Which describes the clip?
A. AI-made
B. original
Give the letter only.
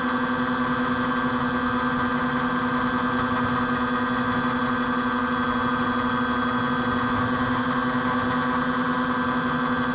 B